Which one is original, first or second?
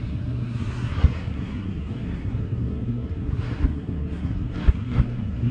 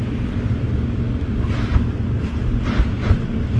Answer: second